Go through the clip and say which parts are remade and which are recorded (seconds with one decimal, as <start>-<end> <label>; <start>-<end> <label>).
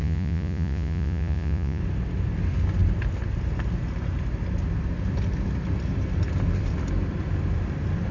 0.0-1.8 remade; 1.8-8.1 recorded